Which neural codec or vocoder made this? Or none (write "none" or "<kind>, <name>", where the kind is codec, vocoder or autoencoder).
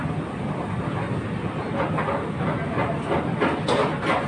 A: none